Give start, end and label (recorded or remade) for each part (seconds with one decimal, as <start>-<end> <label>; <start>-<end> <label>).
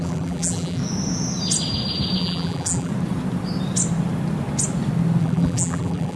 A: 0.0-0.8 remade; 0.8-2.2 recorded; 2.2-2.9 remade; 2.9-5.2 recorded; 5.2-6.2 remade